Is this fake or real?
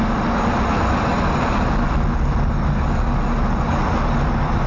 real